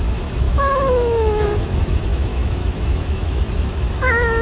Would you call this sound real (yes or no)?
no